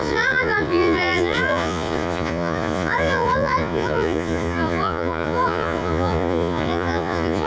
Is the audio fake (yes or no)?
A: yes